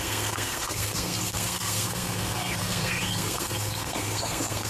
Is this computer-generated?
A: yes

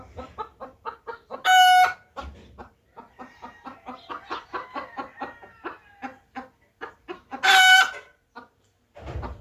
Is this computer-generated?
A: no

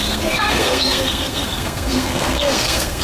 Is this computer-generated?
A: yes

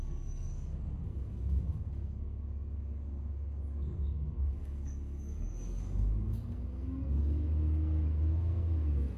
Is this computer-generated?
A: yes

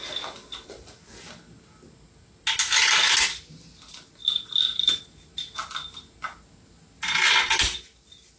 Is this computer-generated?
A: no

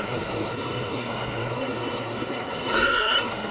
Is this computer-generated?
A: yes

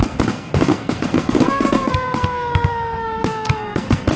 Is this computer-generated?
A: yes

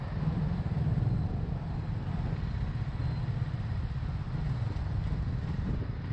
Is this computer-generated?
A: no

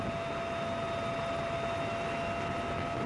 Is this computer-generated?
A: no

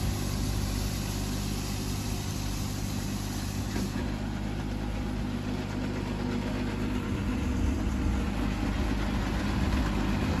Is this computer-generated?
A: no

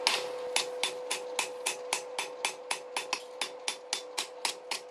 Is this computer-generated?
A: no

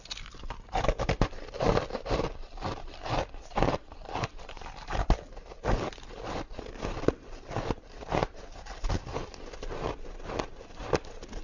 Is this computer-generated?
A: no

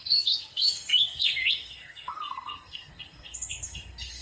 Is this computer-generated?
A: yes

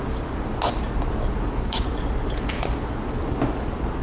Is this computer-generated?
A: no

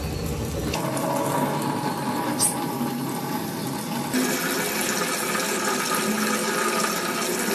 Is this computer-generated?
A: no